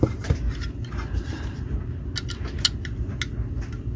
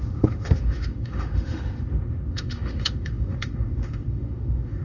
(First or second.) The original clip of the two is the first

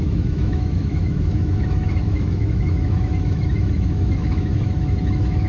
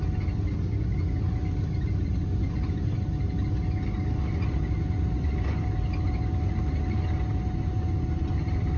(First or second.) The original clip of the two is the second